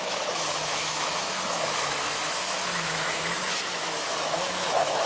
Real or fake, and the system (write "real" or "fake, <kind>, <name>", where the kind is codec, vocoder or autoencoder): fake, autoencoder, DAC-VAE